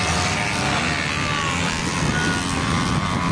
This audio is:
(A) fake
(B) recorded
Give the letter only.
B